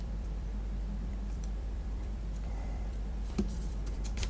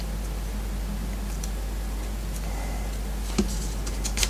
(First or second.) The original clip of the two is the second